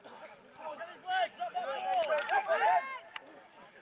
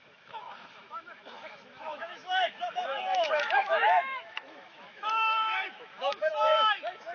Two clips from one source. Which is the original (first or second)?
first